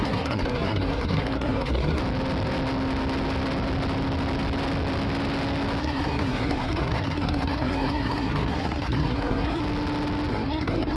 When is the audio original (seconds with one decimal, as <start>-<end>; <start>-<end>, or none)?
2.0-5.8; 9.6-10.3